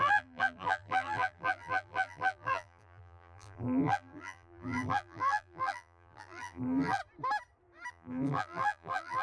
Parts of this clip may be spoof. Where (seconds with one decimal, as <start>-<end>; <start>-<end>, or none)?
0.0-7.0; 7.9-9.2

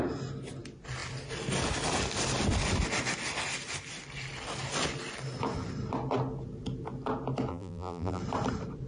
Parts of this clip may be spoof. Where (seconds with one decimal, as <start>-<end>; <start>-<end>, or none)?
7.5-8.2

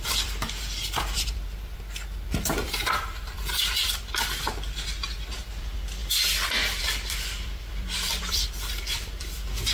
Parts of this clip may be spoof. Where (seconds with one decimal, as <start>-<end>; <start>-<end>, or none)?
0.0-6.0; 6.8-9.7

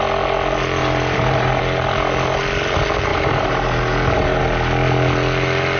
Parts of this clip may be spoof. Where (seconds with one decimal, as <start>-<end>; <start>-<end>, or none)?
0.8-1.6; 3.1-4.4

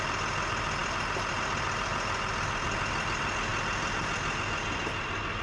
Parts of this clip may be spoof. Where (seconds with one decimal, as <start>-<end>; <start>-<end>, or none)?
none